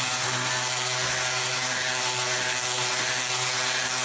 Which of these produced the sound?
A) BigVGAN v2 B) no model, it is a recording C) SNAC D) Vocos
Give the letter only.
B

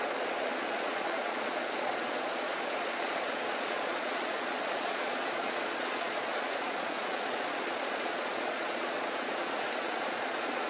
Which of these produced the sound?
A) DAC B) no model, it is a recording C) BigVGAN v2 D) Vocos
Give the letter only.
D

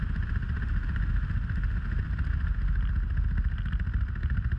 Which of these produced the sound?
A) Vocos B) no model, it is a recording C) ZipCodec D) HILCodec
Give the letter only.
B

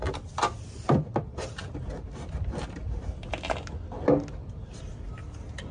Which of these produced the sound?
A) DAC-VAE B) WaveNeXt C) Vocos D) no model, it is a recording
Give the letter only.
D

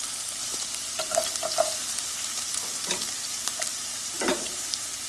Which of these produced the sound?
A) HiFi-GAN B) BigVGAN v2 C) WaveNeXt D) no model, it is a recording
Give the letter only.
B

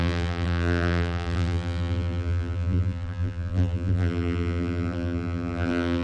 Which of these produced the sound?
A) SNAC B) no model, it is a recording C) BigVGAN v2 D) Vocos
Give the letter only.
C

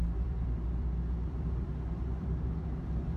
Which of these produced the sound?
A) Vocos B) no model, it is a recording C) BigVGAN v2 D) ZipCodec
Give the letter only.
C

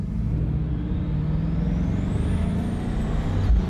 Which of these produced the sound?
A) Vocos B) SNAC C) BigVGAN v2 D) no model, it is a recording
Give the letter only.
D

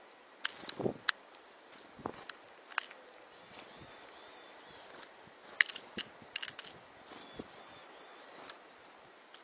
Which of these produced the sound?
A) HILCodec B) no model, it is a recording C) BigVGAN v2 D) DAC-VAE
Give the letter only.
B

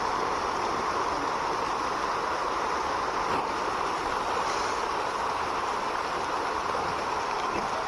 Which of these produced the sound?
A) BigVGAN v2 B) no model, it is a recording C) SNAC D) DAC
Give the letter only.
B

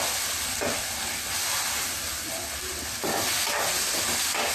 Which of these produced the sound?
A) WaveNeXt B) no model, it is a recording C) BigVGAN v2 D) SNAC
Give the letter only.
B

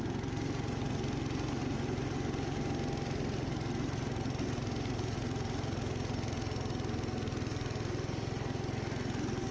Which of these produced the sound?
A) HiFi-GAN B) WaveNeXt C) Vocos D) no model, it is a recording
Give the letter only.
D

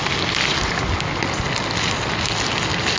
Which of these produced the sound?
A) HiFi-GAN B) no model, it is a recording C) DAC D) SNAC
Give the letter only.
B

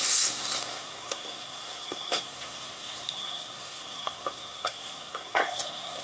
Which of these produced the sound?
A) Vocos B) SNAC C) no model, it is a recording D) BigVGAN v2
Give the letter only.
B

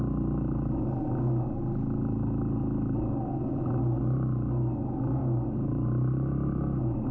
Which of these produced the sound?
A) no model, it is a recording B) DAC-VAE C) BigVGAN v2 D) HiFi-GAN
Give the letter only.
A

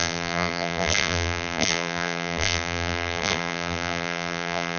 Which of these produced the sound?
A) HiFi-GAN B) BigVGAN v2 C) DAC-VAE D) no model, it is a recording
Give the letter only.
B